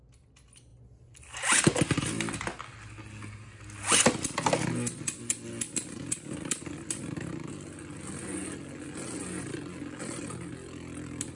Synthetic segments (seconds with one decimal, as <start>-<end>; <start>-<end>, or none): none